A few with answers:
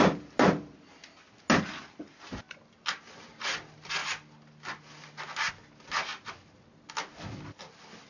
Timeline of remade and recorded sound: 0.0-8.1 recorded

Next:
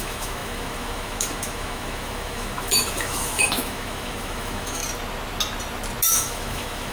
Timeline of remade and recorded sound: 0.0-4.8 remade; 4.8-6.1 recorded; 6.1-6.9 remade

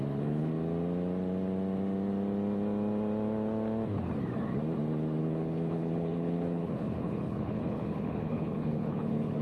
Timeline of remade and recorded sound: 0.0-0.5 remade; 0.5-5.2 recorded; 5.2-9.4 remade

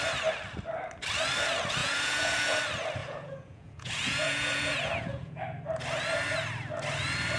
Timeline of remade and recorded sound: 0.0-1.8 recorded; 1.8-2.6 remade; 2.6-3.0 recorded; 3.0-5.4 remade; 5.4-7.4 recorded

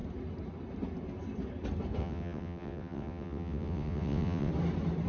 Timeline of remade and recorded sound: 0.0-2.0 recorded; 2.0-4.5 remade; 4.5-5.1 recorded

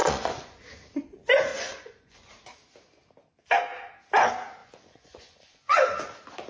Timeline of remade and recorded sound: 0.0-0.6 remade; 0.6-1.5 recorded; 1.5-2.3 remade; 2.3-4.6 recorded; 4.6-6.0 remade; 6.0-6.5 recorded